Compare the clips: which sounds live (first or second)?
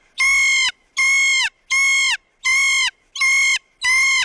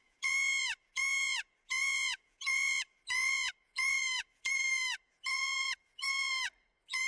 first